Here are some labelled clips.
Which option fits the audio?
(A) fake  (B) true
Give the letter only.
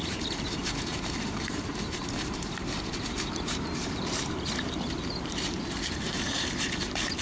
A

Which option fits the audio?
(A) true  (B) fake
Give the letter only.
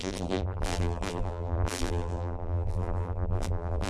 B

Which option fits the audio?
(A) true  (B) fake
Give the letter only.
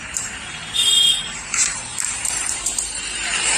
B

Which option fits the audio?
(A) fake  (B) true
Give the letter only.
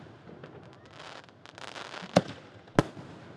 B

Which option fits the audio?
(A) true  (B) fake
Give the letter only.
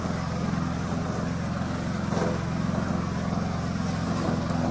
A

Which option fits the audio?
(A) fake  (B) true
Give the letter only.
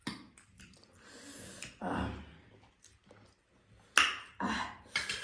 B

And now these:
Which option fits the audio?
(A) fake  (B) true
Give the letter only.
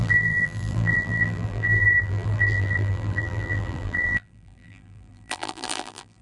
A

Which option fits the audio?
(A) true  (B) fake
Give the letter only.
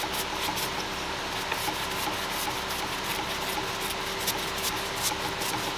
A